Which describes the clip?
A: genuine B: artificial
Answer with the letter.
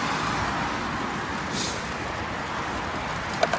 A